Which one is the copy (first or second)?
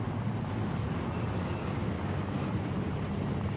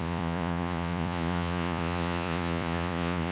second